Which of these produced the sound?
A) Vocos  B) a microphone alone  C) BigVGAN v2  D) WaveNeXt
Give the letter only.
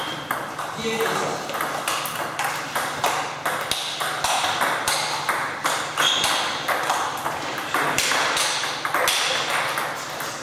B